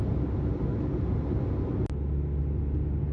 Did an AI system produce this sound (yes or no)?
no